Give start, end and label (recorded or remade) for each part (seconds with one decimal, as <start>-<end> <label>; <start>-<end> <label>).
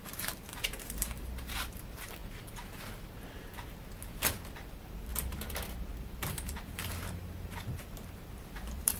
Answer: 0.0-2.2 remade; 2.2-4.3 recorded; 4.3-5.1 remade; 5.1-6.0 recorded; 6.0-9.0 remade